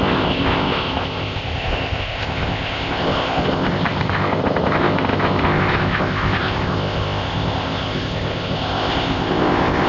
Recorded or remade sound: remade